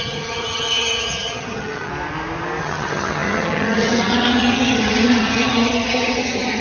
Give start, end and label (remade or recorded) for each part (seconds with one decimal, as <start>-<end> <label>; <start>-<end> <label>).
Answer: 0.0-1.9 remade; 1.9-2.6 recorded; 2.6-6.6 remade